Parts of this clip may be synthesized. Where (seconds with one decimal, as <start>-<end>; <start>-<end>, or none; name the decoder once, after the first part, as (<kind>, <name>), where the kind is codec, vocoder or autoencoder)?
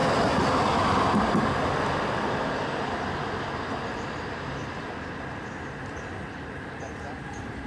none